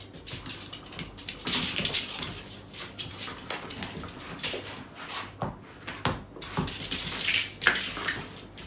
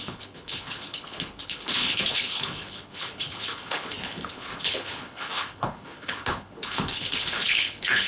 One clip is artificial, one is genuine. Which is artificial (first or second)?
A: second